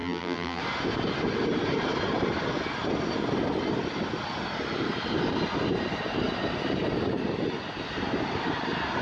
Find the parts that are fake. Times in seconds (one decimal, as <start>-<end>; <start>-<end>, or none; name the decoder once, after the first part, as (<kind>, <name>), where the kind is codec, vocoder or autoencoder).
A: 0.0-0.6 (vocoder, BigVGAN v2)